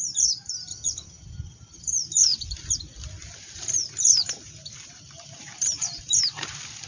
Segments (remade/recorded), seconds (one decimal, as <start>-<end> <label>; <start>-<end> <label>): 0.0-0.7 recorded; 0.7-1.2 remade; 1.2-6.9 recorded